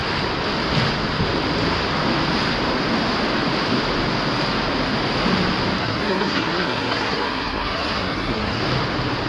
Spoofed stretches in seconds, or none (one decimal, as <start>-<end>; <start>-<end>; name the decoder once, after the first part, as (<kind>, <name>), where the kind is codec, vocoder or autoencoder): 5.8-8.6 (codec, SNAC)